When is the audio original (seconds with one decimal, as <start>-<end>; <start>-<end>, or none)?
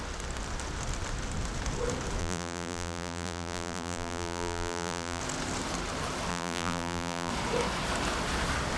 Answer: 0.0-2.2; 5.2-6.3; 7.3-8.8